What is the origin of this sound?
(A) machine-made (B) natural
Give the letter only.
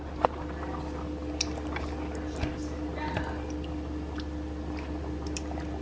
B